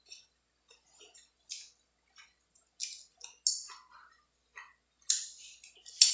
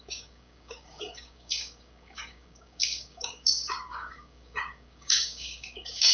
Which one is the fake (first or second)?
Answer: second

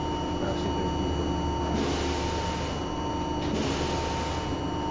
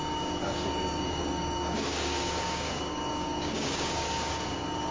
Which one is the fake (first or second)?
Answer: second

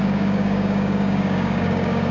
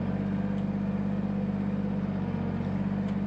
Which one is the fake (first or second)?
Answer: first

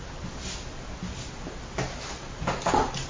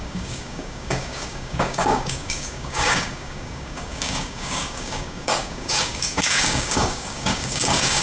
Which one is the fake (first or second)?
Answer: second